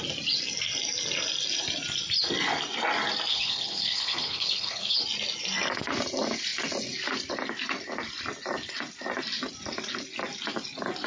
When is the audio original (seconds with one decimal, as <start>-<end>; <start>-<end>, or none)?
0.0-3.3; 5.0-11.1